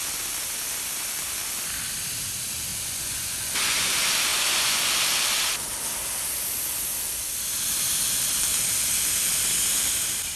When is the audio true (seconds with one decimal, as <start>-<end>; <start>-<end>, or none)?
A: 0.0-2.7; 3.9-4.3; 4.9-10.4